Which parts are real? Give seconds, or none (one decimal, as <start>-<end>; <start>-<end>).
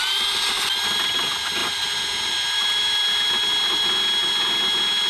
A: 0.0-5.1